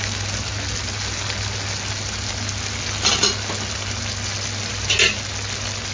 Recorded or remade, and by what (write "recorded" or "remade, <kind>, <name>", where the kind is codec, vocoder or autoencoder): recorded